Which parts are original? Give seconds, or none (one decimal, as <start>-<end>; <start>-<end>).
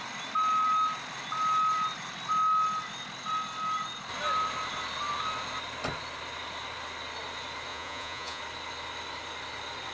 0.0-7.7; 8.4-9.9